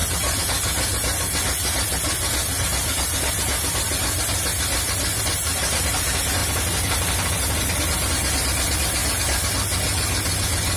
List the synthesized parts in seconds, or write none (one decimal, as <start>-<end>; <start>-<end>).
none